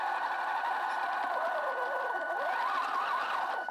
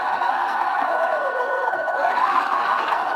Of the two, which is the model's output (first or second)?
second